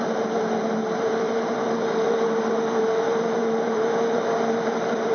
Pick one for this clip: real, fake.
fake